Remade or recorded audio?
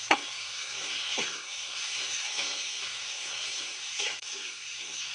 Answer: remade